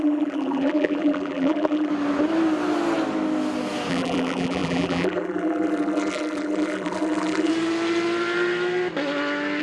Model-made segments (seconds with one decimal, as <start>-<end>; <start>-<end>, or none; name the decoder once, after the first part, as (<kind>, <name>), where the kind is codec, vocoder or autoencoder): 0.0-1.9 (vocoder, BigVGAN v2); 3.9-7.5